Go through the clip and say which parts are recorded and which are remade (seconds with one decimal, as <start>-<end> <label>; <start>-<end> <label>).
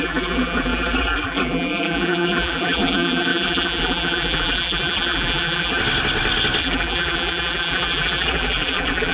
0.0-5.8 remade; 5.8-6.6 recorded; 6.6-9.1 remade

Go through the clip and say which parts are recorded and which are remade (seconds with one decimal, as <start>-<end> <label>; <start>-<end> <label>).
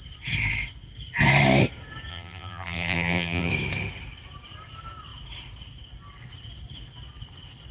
0.0-2.1 recorded; 2.1-3.5 remade; 3.5-7.7 recorded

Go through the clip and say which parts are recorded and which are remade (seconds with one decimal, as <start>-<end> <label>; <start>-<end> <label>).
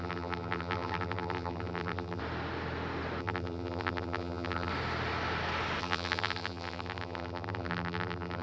0.0-2.2 remade; 2.2-3.2 recorded; 3.2-4.7 remade; 4.7-5.8 recorded; 5.8-8.4 remade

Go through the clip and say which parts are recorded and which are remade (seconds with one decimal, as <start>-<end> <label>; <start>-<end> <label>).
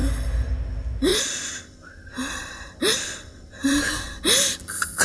0.0-1.1 recorded; 1.1-3.9 remade; 3.9-5.0 recorded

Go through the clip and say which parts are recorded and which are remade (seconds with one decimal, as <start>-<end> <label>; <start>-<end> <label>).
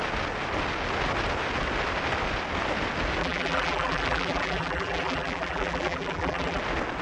0.0-3.2 recorded; 3.2-6.6 remade; 6.6-7.0 recorded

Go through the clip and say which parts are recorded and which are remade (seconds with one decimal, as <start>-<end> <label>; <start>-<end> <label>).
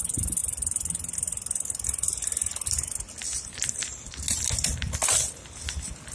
0.0-6.1 recorded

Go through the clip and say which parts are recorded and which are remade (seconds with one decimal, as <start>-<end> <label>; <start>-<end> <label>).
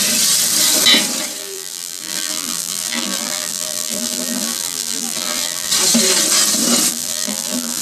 0.0-1.4 recorded; 1.4-5.7 remade; 5.7-6.9 recorded; 6.9-7.8 remade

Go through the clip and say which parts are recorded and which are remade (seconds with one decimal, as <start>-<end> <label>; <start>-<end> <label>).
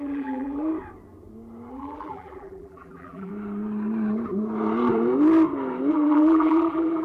0.0-0.7 remade; 0.7-1.7 recorded; 1.7-3.3 remade; 3.3-5.9 recorded; 5.9-7.0 remade